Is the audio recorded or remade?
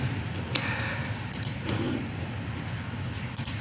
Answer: recorded